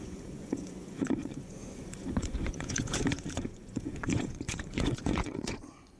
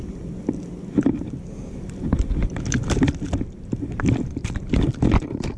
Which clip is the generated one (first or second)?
first